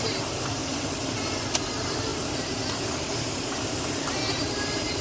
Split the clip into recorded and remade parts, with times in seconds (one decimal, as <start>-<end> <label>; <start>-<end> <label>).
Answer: 0.0-0.6 remade; 0.6-1.7 recorded; 1.7-5.0 remade